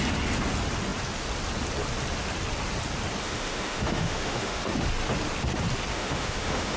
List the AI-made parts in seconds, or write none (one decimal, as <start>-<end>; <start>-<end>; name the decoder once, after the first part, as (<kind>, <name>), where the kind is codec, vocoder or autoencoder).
3.2-4.7 (autoencoder, DAC-VAE); 5.9-6.8